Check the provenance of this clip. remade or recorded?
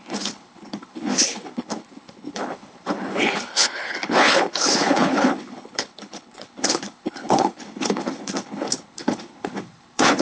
remade